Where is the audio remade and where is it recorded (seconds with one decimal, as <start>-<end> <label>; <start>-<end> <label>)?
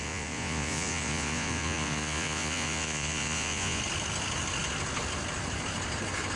0.0-3.8 remade; 3.8-6.4 recorded